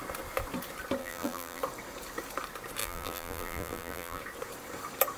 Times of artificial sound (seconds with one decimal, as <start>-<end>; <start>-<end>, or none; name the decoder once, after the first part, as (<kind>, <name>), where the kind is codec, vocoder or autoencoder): 1.0-1.6 (vocoder, BigVGAN v2); 2.8-4.2